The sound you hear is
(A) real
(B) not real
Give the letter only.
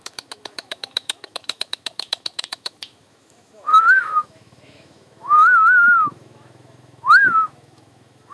B